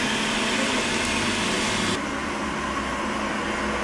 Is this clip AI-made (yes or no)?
no